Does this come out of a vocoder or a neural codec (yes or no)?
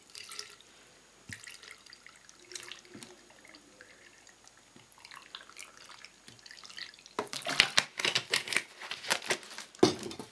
no